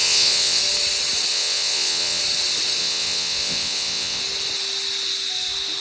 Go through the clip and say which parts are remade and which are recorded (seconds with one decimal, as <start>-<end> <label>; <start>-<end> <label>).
0.0-0.6 remade; 0.6-1.3 recorded; 1.3-2.2 remade; 2.2-2.8 recorded; 2.8-4.2 remade; 4.2-5.8 recorded